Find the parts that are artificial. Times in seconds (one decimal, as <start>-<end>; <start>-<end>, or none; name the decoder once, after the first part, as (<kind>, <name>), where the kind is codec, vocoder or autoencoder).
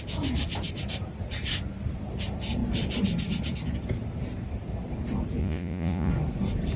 5.4-6.1 (vocoder, Vocos)